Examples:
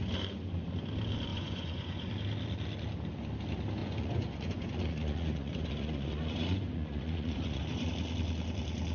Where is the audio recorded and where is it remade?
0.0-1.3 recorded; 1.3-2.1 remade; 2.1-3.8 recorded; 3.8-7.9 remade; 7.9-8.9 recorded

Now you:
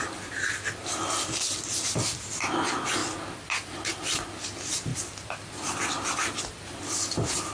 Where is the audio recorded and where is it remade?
0.0-7.5 recorded

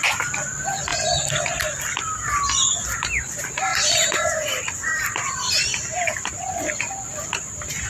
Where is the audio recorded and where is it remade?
0.0-3.7 recorded; 3.7-4.9 remade; 4.9-7.9 recorded

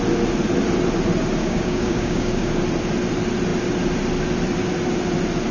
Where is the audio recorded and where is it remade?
0.0-1.4 recorded; 1.4-2.6 remade; 2.6-5.5 recorded

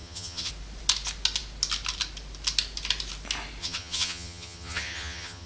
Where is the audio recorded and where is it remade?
0.0-0.5 remade; 0.5-3.6 recorded; 3.6-5.5 remade

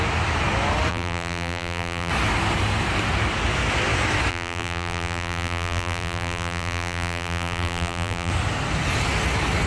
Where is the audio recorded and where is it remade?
0.0-0.9 recorded; 0.9-2.1 remade; 2.1-4.3 recorded; 4.3-8.3 remade; 8.3-9.7 recorded

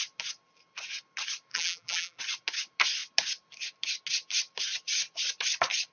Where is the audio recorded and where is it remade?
0.0-1.5 recorded; 1.5-2.2 remade; 2.2-5.9 recorded

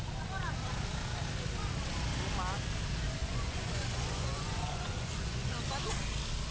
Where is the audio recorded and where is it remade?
0.0-3.2 recorded; 3.2-5.5 remade; 5.5-6.5 recorded